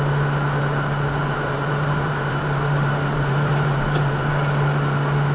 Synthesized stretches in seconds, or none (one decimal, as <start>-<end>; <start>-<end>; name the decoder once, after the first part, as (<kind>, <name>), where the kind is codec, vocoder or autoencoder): 1.2-4.4 (vocoder, BigVGAN v2)

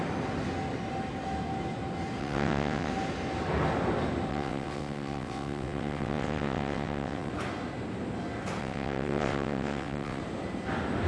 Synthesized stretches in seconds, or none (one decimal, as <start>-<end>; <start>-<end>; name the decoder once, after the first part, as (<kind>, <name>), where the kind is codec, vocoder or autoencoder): 2.2-2.9 (vocoder, WaveNeXt); 4.3-7.3; 8.6-10.2

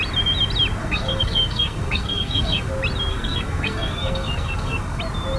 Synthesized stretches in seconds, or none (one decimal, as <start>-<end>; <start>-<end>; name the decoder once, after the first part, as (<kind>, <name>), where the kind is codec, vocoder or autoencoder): 0.8-2.7 (codec, SNAC); 3.1-5.0

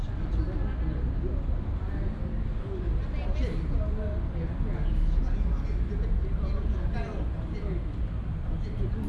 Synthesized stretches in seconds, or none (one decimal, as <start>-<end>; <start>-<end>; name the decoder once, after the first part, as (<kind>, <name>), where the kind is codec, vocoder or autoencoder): none

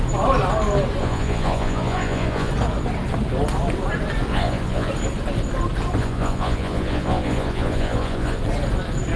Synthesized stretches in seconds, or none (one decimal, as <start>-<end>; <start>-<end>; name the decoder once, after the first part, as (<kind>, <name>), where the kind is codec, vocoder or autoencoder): 1.0-2.5 (vocoder, Vocos); 4.3-4.9; 6.0-8.4

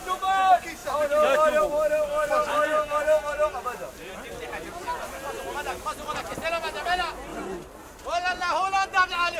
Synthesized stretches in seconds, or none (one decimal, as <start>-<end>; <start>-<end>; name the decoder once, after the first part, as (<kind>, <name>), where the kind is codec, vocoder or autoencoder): none